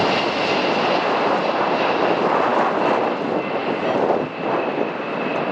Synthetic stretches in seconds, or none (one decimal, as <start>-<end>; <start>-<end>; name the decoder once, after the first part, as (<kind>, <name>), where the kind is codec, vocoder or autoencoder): none